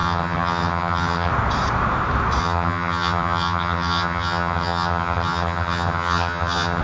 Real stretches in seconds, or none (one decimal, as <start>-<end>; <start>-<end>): 1.3-2.4